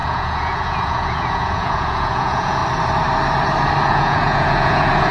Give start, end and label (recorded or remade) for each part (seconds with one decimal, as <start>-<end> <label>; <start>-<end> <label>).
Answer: 0.0-2.6 remade; 2.6-3.9 recorded; 3.9-5.1 remade